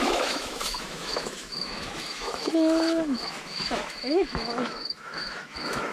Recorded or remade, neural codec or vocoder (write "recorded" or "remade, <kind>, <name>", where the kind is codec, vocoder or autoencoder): remade, autoencoder, DAC-VAE